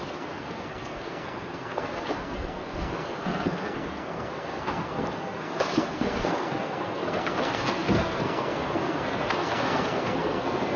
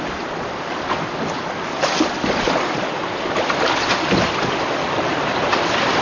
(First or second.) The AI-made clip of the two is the first